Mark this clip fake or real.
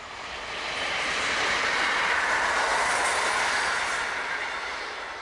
real